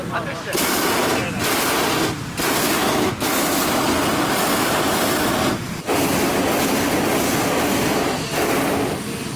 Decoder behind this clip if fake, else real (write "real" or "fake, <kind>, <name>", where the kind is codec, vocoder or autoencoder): real